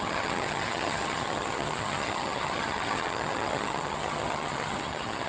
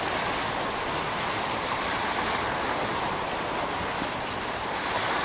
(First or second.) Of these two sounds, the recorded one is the second